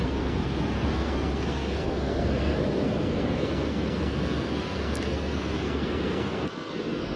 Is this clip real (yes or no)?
no